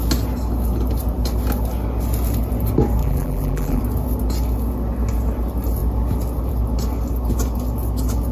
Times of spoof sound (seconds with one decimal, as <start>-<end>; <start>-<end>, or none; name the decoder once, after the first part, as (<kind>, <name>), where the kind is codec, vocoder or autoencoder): 3.0-3.8 (vocoder, BigVGAN v2)